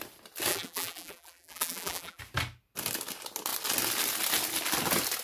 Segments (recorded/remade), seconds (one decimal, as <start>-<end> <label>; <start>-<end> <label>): 0.0-0.5 recorded; 0.5-2.2 remade; 2.2-5.2 recorded